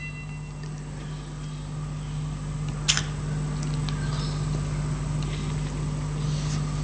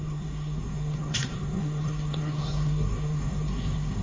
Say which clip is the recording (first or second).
first